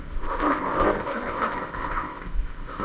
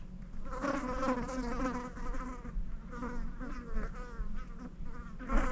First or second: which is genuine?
second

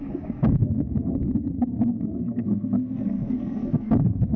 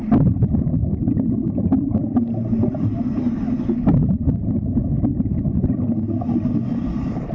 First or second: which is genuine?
second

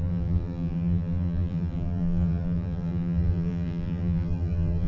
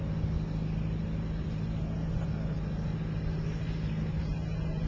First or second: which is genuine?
second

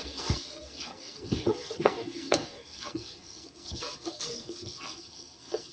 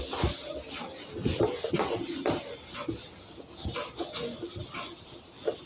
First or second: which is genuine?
second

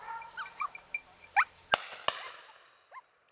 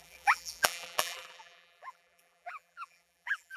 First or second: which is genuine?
first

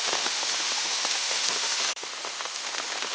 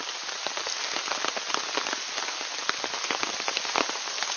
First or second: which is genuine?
second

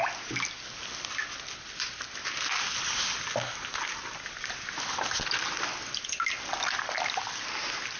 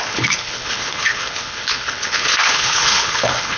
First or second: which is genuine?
first